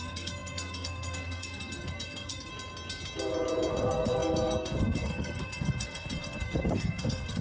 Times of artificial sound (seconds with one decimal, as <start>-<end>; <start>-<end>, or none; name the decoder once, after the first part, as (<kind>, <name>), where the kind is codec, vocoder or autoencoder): 0.0-2.5 (codec, SNAC); 3.7-7.4